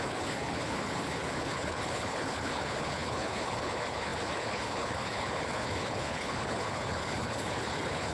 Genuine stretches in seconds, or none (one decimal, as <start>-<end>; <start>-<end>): none